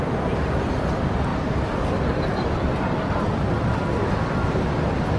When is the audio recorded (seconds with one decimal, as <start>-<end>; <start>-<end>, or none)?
0.0-5.2